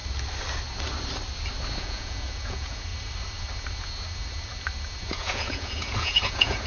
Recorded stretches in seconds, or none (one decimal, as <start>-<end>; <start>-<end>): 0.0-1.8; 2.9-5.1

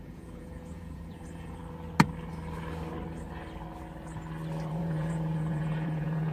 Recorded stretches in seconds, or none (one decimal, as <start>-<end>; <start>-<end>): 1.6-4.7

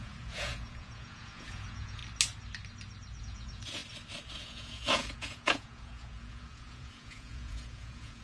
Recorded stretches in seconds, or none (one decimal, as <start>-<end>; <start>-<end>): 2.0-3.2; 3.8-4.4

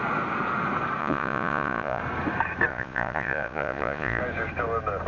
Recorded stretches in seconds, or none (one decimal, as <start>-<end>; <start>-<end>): 0.0-1.0; 2.0-2.7; 4.2-5.1

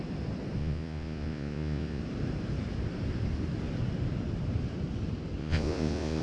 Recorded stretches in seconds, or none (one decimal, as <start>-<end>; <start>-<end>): 0.0-0.6; 2.0-5.4

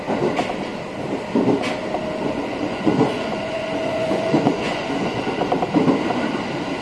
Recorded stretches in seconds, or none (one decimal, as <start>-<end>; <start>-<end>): 0.0-2.1; 5.4-6.8

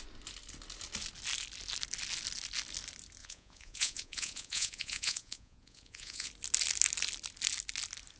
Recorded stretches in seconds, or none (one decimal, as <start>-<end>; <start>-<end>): 0.0-3.2; 6.3-8.2

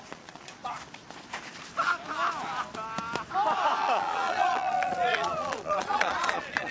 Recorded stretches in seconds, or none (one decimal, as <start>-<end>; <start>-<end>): 0.6-3.8